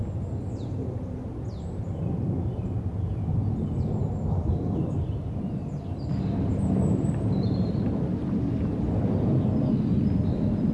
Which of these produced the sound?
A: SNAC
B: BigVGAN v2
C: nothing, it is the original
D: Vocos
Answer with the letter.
C